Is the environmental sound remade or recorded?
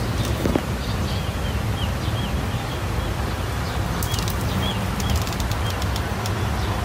recorded